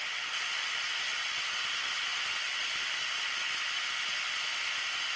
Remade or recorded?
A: recorded